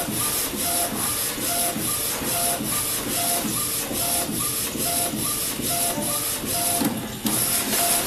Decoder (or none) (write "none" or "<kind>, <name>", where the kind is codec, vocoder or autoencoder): none